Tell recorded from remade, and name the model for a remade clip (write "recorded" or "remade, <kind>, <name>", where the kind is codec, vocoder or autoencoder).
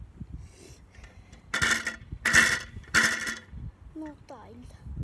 recorded